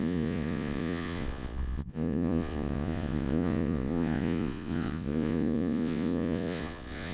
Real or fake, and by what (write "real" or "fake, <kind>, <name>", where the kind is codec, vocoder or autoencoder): fake, vocoder, Vocos